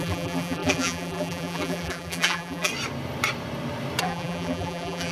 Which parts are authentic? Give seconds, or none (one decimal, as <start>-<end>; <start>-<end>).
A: 2.7-4.0